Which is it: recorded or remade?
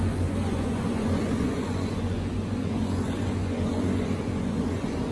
remade